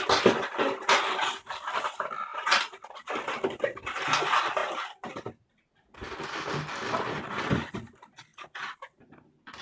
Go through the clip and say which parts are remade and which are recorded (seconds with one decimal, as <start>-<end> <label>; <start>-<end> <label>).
0.0-9.6 recorded